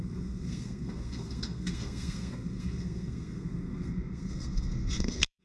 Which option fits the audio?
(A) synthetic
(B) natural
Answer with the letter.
A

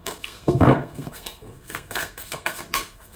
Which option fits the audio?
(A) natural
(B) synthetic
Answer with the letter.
B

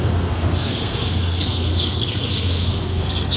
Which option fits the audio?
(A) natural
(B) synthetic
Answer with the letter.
B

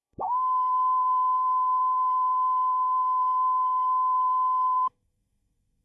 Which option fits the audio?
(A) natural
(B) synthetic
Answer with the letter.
B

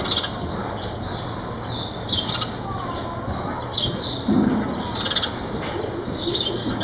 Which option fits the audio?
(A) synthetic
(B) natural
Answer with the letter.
B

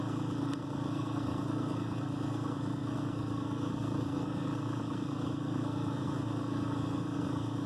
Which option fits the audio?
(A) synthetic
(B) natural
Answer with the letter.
A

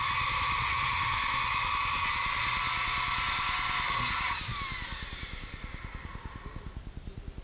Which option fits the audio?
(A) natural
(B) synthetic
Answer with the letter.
A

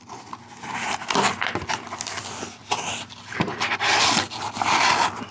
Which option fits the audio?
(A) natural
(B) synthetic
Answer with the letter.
A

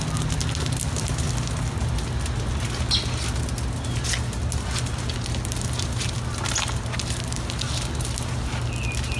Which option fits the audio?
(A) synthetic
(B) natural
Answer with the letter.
B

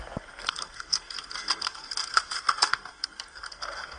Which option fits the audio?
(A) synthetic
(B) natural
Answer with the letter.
A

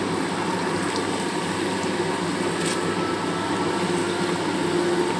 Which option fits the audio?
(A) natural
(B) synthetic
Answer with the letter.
A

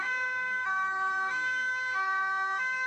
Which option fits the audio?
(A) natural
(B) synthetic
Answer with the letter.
B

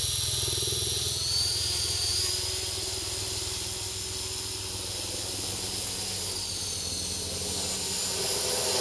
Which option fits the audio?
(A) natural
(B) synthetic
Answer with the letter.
A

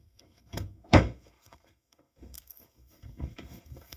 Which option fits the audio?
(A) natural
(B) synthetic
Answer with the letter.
B